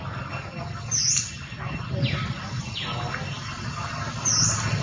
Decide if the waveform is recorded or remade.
recorded